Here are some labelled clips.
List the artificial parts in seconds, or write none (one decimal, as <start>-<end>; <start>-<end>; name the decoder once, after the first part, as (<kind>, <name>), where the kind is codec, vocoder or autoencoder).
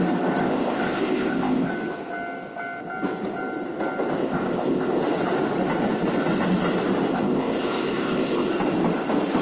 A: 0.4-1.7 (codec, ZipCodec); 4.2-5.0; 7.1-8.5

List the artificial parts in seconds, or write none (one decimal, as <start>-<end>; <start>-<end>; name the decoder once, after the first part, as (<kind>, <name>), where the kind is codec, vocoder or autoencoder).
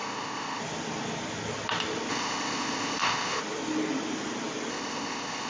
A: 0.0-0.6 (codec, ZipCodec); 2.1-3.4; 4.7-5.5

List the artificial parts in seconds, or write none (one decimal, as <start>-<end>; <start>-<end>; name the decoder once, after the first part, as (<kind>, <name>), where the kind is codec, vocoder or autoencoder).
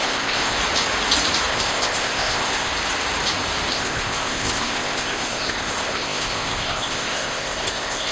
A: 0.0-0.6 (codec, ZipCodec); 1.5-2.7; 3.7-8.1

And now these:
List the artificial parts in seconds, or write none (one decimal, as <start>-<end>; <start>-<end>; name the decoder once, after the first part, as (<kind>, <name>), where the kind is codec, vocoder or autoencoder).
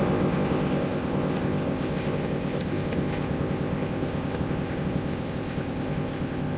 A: 0.0-6.6 (codec, ZipCodec)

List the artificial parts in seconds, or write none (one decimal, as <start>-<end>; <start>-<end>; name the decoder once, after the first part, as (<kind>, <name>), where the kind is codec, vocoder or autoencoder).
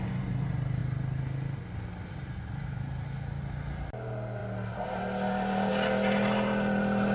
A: none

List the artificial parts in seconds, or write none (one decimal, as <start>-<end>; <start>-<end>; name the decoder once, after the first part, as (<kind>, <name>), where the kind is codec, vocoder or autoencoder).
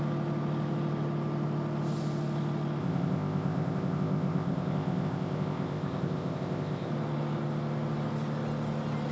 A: 2.8-6.9 (codec, ZipCodec)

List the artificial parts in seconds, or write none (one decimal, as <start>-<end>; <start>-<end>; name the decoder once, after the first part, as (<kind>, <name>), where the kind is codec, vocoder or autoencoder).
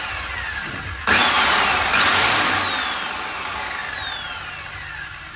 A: none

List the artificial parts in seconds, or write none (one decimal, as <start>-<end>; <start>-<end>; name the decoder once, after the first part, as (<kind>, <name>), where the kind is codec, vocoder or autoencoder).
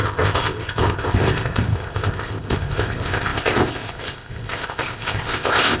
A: 0.0-5.8 (codec, ZipCodec)